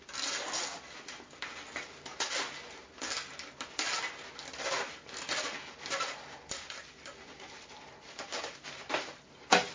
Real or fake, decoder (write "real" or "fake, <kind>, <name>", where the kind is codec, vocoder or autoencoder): real